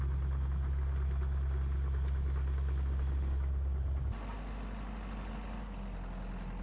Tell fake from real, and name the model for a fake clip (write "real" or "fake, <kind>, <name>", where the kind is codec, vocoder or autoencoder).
real